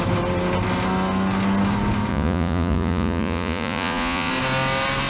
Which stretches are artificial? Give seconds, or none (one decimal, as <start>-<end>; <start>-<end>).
2.1-4.3